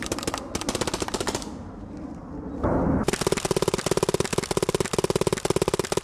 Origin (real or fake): real